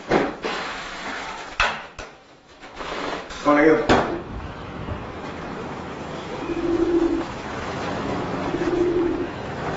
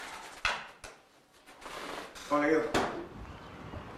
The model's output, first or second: first